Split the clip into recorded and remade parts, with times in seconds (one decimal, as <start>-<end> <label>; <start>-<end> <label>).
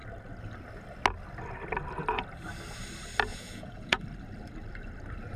0.0-3.3 recorded; 3.3-4.0 remade; 4.0-5.4 recorded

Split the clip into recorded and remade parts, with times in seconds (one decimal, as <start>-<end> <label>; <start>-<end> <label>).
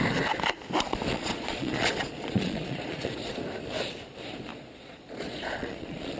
0.0-1.1 recorded; 1.1-3.3 remade; 3.3-4.5 recorded; 4.5-6.2 remade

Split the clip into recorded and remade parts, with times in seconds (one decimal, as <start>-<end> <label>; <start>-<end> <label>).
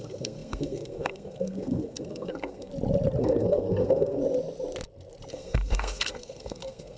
0.0-2.7 remade; 2.7-3.2 recorded; 3.2-4.2 remade; 4.2-5.3 recorded; 5.3-7.0 remade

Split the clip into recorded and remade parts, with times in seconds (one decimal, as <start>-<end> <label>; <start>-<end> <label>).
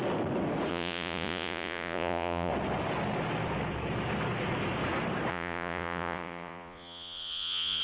0.0-0.7 recorded; 0.7-2.5 remade; 2.5-5.3 recorded; 5.3-7.8 remade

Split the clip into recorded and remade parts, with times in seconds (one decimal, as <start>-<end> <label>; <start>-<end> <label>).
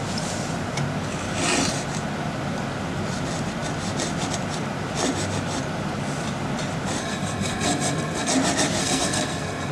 0.0-7.0 recorded; 7.0-8.3 remade; 8.3-8.8 recorded; 8.8-9.7 remade